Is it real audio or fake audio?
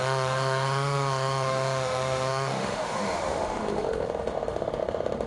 fake